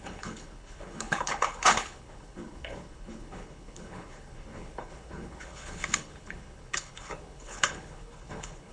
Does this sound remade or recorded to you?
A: remade